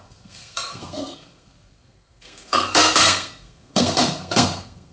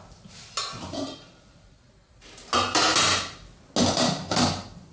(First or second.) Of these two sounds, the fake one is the first